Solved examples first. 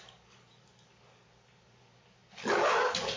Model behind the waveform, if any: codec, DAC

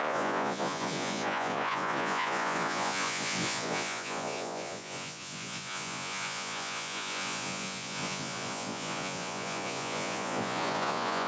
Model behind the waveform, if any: vocoder, Vocos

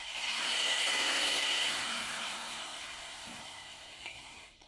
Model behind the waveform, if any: codec, SNAC